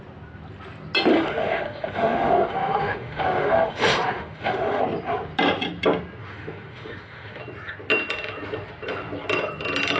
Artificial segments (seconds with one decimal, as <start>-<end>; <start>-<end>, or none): 1.1-4.8; 6.2-7.4